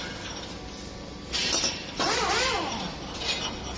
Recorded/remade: recorded